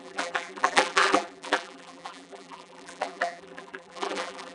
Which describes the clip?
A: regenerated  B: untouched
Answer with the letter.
A